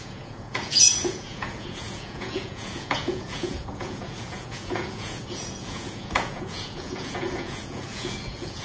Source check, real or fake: fake